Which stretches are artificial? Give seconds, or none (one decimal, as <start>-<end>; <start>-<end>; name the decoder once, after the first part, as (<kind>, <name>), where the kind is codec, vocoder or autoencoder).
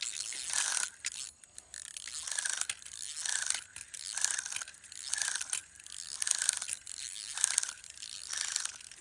none